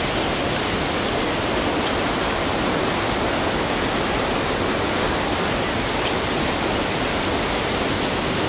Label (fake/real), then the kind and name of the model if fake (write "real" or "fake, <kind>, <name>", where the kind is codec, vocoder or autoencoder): real